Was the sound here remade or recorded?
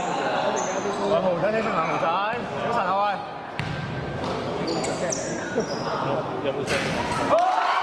recorded